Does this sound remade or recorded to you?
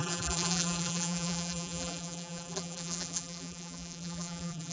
remade